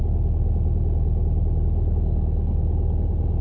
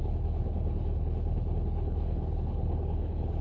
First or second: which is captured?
first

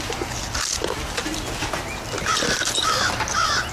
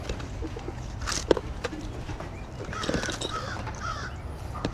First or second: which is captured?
first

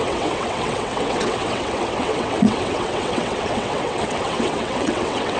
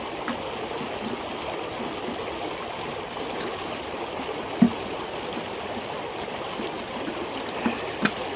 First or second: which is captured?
second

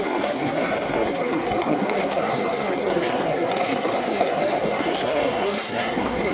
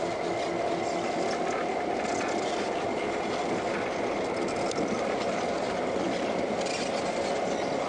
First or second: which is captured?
second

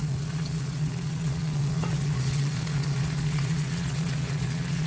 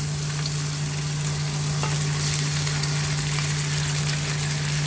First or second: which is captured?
second